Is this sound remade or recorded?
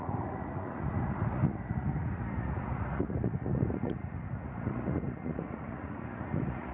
remade